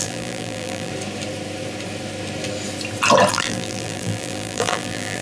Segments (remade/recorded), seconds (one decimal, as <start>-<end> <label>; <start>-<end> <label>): 0.0-0.9 remade; 0.9-3.3 recorded; 3.3-5.2 remade